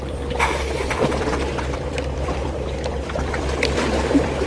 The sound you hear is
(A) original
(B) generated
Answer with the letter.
B